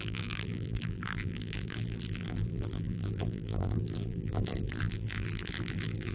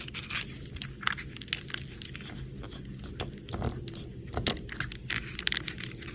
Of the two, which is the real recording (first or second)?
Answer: second